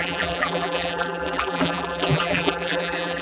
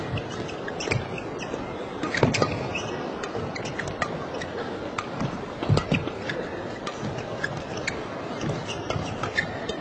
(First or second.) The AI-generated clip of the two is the first